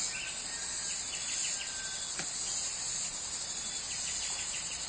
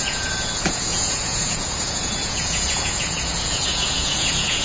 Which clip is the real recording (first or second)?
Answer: first